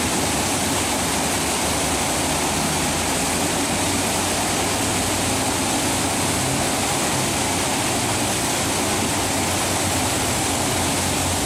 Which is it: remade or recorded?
recorded